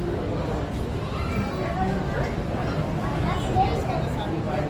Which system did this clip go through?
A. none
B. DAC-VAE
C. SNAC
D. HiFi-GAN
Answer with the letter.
A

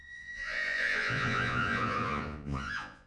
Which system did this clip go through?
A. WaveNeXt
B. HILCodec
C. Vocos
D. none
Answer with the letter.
C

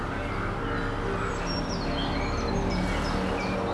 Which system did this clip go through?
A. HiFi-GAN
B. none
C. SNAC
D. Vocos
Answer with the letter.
B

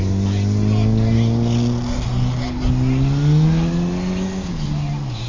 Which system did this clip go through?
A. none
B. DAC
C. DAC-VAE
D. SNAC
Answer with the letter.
A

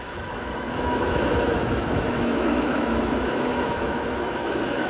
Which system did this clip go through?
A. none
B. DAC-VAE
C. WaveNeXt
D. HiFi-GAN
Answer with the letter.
B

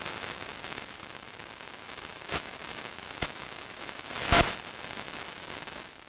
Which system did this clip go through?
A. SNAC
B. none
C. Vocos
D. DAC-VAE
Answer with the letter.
D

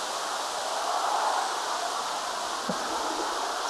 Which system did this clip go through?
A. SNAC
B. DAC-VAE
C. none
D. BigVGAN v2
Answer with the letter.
C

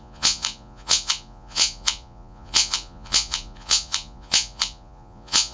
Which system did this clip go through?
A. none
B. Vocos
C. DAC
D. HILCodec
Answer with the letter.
B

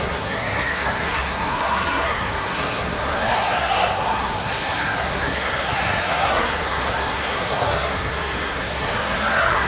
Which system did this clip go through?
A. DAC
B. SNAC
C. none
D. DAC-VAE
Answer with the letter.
B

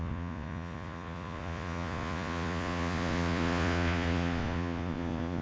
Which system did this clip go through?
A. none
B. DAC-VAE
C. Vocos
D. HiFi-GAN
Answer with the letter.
C